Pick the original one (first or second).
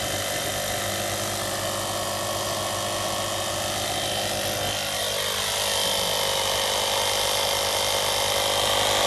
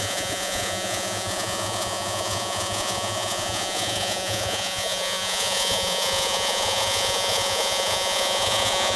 first